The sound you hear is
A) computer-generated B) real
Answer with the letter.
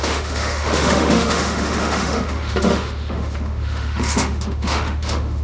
A